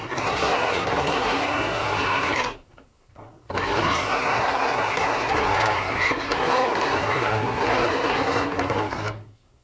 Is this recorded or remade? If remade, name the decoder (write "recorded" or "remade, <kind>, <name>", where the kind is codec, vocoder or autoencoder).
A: remade, codec, SNAC